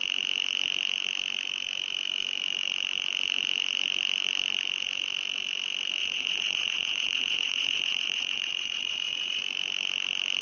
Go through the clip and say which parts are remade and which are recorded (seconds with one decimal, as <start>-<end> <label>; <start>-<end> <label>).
0.0-6.0 recorded; 6.0-9.4 remade; 9.4-10.4 recorded